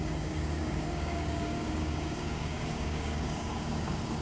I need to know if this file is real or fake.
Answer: fake